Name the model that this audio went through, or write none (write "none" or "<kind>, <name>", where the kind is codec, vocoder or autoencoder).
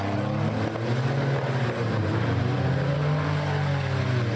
none